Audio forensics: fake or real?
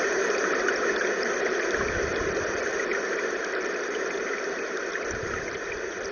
fake